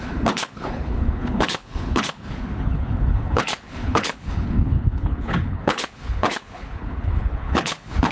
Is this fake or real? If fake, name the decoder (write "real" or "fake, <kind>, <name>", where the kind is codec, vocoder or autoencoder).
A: fake, codec, HILCodec